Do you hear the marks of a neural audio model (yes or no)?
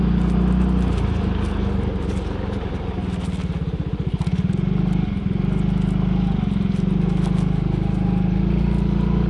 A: no